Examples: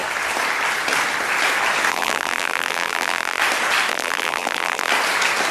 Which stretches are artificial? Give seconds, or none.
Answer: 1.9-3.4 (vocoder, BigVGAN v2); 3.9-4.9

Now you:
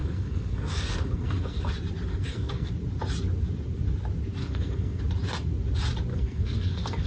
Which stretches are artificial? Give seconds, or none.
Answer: 0.0-1.7 (codec, SNAC); 2.1-2.7; 4.4-5.0; 6.1-7.1

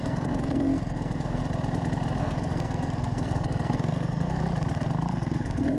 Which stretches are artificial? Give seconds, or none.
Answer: 0.0-1.4 (codec, SNAC); 2.2-4.4; 5.1-5.8

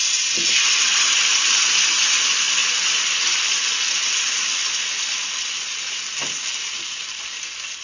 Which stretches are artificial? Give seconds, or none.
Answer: none

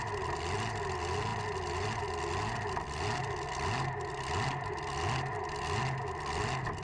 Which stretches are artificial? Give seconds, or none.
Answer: none

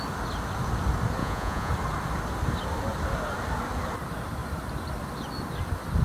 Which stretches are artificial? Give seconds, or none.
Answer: 1.2-1.7 (vocoder, Vocos)